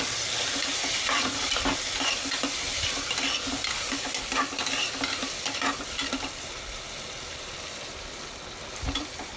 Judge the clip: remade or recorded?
remade